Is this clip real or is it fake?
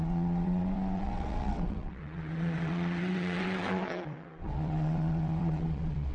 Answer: fake